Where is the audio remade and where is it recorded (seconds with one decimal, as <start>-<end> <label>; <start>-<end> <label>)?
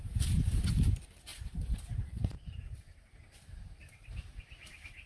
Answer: 0.0-1.3 recorded; 1.3-4.4 remade; 4.4-5.1 recorded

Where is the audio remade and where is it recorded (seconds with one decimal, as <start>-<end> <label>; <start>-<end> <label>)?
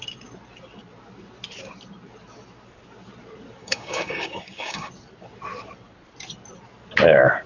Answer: 0.0-3.6 recorded; 3.6-4.9 remade; 4.9-7.5 recorded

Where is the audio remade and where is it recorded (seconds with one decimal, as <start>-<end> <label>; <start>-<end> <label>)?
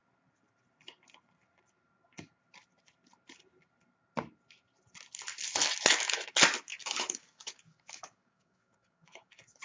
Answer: 0.0-6.7 recorded; 6.7-9.6 remade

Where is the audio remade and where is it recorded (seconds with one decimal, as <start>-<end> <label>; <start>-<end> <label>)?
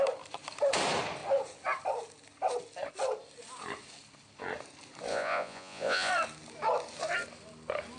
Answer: 0.0-5.1 recorded; 5.1-6.1 remade; 6.1-8.0 recorded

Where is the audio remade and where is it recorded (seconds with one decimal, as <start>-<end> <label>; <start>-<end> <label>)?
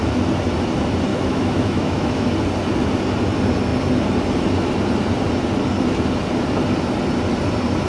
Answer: 0.0-1.1 recorded; 1.1-2.3 remade; 2.3-7.9 recorded